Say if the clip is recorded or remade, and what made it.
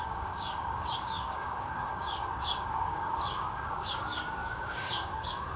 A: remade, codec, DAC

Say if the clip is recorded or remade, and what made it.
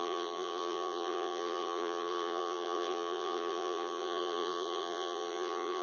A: remade, vocoder, BigVGAN v2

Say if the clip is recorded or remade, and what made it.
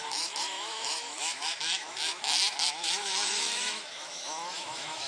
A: remade, autoencoder, DAC-VAE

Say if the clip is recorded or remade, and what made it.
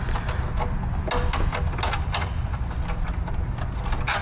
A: recorded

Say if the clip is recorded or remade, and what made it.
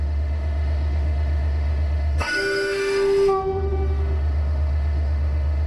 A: remade, autoencoder, DAC-VAE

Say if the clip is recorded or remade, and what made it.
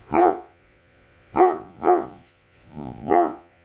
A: remade, vocoder, Vocos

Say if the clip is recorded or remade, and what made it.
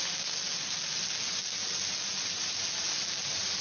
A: recorded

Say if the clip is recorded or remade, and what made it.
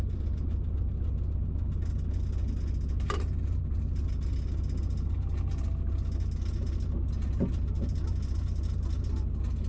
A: recorded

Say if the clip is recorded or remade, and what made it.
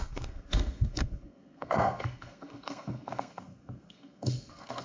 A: remade, codec, SNAC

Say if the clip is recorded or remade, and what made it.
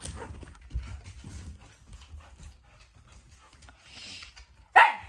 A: recorded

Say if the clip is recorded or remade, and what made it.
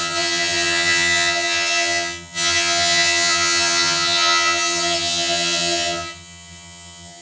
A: remade, vocoder, HiFi-GAN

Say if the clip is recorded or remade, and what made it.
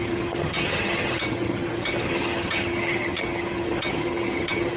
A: remade, vocoder, HiFi-GAN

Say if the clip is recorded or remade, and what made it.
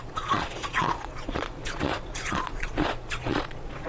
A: remade, vocoder, Vocos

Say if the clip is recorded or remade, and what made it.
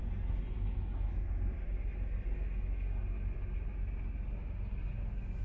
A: recorded